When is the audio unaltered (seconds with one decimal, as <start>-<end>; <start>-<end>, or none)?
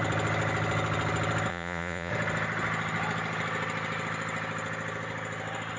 0.0-1.5; 2.1-5.8